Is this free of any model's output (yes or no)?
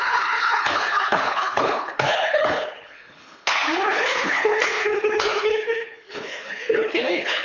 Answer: no